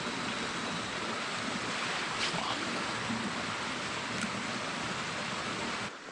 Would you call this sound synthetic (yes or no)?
no